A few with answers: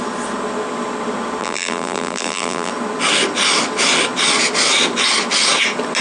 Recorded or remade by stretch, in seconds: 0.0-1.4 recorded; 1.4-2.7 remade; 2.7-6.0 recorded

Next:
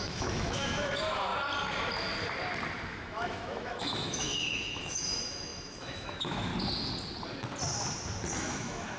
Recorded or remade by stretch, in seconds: 0.0-1.3 remade; 1.3-2.9 recorded; 2.9-6.5 remade; 6.5-8.4 recorded; 8.4-9.0 remade

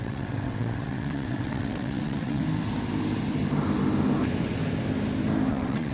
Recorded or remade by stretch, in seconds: 0.0-2.4 remade; 2.4-5.5 recorded; 5.5-5.9 remade

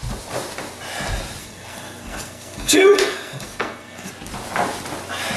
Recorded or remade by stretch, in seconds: 0.0-1.4 recorded; 1.4-4.1 remade; 4.1-5.4 recorded

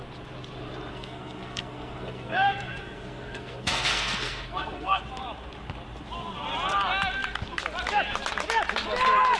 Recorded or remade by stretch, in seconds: 0.0-0.9 recorded; 0.9-5.0 remade; 5.0-9.4 recorded

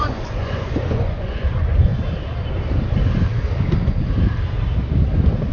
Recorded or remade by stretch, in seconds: 0.0-1.9 remade; 1.9-5.5 recorded

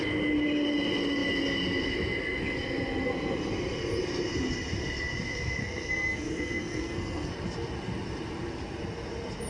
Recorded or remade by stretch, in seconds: 0.0-5.6 recorded; 5.6-7.3 remade; 7.3-9.5 recorded

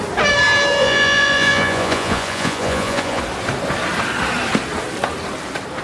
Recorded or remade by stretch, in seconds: 0.0-0.8 recorded; 0.8-3.2 remade; 3.2-5.8 recorded